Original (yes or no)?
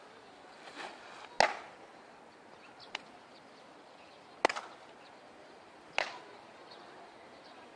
yes